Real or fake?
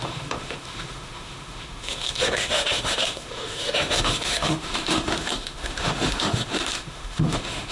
fake